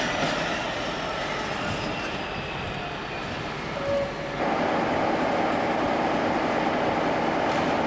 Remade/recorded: recorded